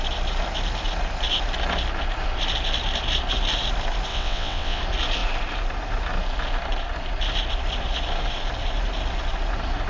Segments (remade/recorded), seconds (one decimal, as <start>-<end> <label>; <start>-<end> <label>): 0.0-4.1 recorded; 4.1-4.8 remade; 4.8-9.9 recorded